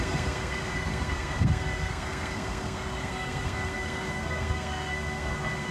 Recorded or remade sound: remade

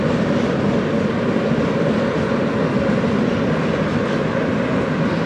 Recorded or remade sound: recorded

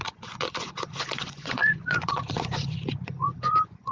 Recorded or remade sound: remade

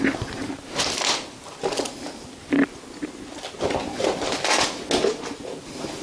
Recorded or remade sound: recorded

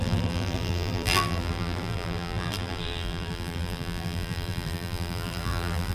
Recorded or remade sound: remade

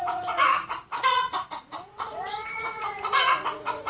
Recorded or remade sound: remade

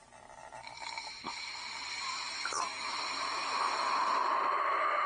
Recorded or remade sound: recorded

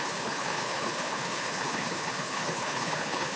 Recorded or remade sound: remade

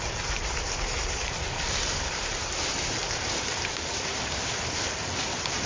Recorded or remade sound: remade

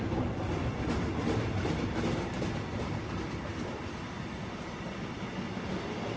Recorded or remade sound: recorded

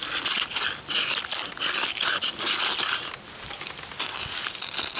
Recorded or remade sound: recorded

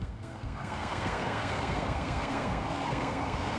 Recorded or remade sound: remade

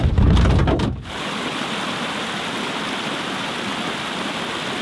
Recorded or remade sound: recorded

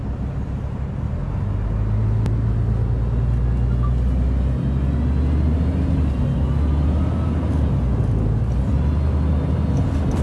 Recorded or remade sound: recorded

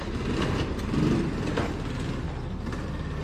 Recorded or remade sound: recorded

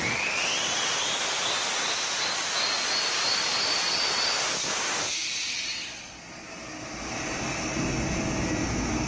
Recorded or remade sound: recorded